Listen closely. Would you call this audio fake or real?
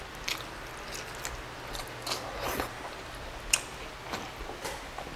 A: real